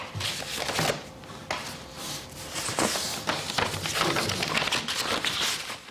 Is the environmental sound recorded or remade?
recorded